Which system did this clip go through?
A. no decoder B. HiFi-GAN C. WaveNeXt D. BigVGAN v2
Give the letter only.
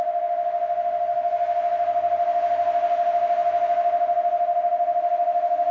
A